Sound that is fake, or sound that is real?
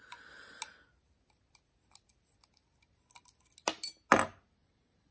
real